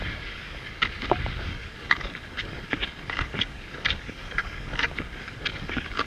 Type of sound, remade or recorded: remade